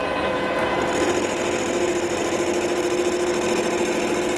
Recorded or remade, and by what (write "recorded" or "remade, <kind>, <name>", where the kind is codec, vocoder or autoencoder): recorded